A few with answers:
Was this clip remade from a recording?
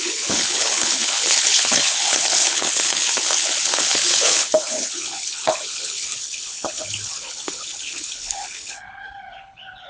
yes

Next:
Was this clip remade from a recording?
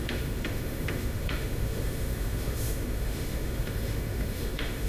yes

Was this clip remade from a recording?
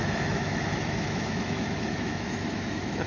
yes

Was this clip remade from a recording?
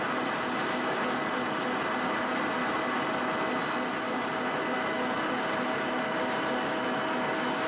no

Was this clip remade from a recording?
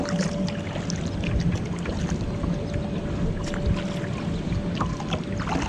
no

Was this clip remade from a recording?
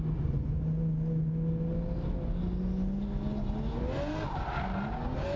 no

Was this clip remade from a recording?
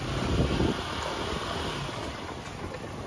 no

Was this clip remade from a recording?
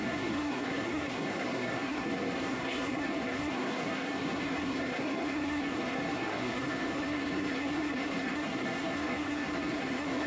yes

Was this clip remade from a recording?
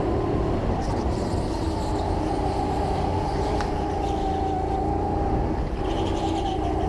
no